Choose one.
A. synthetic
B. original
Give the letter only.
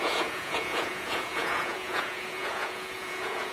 A